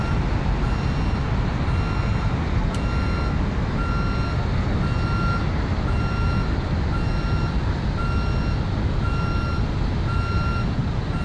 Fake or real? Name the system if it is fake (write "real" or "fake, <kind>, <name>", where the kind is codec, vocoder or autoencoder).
real